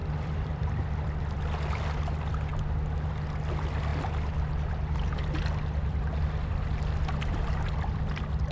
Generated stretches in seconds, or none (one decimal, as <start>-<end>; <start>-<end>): 0.0-0.7